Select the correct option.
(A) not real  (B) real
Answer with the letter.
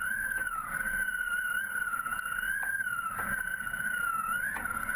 A